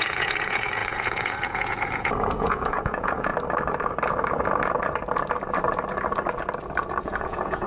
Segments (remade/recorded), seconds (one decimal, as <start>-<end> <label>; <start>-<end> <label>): 0.0-3.3 remade; 3.3-7.0 recorded; 7.0-7.7 remade